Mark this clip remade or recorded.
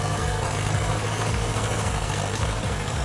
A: remade